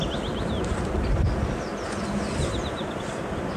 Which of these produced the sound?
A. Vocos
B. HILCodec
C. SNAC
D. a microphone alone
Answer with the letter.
D